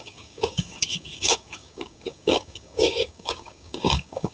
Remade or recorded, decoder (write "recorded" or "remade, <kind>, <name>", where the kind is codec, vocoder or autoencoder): remade, codec, DAC